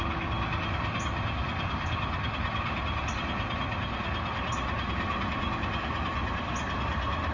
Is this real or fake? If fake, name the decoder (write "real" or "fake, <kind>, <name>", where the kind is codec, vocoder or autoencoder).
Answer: real